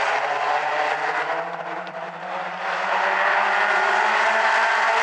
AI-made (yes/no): yes